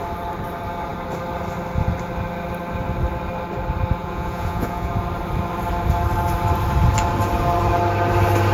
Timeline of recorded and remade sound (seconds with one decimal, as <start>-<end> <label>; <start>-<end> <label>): 0.0-4.0 recorded; 4.0-4.9 remade; 4.9-8.5 recorded